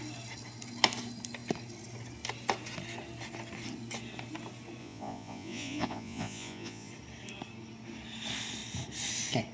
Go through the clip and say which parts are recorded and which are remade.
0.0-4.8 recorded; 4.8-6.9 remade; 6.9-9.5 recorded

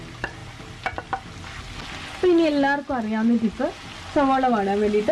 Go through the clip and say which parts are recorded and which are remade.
0.0-5.1 recorded